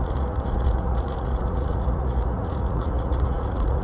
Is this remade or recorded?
remade